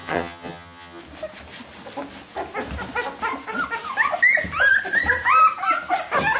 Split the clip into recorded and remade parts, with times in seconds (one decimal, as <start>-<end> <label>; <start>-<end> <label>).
0.0-1.0 remade; 1.0-6.4 recorded